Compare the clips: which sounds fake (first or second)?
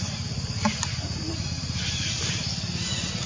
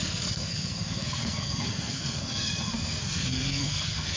second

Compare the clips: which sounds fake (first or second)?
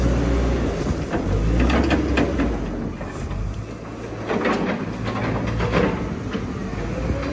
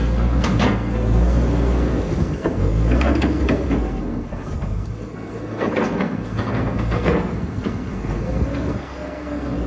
second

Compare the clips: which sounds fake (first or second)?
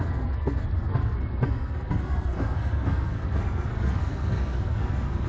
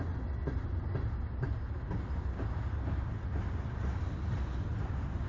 first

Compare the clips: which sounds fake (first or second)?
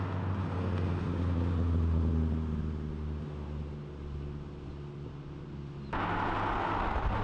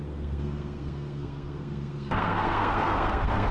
second